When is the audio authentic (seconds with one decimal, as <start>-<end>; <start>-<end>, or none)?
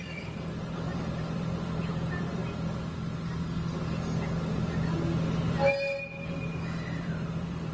2.4-7.0